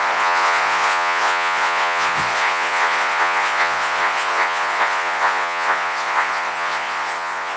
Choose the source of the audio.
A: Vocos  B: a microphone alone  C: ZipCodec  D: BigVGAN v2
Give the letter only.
A